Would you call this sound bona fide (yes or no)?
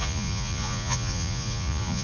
no